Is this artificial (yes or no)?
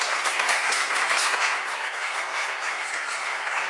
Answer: yes